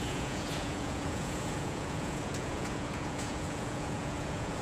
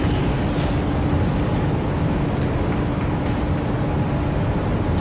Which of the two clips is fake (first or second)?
first